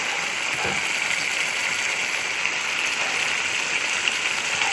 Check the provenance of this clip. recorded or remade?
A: recorded